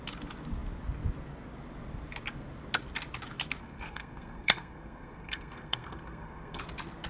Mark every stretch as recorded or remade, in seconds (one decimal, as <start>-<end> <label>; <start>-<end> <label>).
0.0-3.6 recorded; 3.6-6.6 remade; 6.6-7.1 recorded